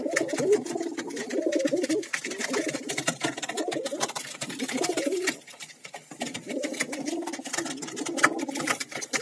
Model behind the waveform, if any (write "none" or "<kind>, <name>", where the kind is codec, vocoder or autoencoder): vocoder, BigVGAN v2